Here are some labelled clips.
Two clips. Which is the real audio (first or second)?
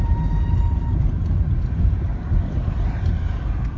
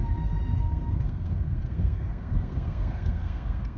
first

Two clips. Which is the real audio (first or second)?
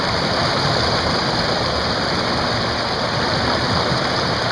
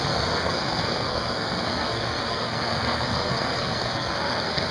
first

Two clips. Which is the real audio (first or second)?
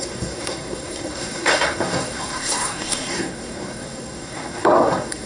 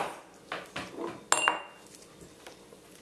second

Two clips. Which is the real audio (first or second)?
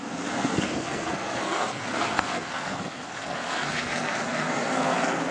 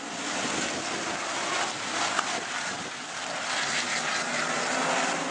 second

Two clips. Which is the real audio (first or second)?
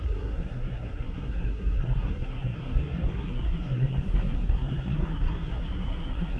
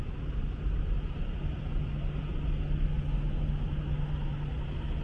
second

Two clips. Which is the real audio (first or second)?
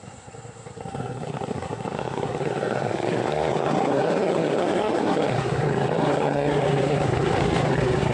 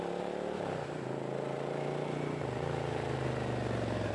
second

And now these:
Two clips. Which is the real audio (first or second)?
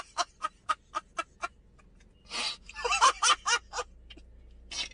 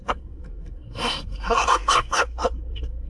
first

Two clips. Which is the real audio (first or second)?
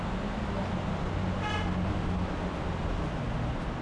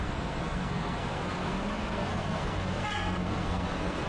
first